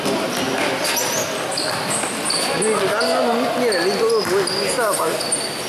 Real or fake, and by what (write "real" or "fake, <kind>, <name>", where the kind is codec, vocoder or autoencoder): real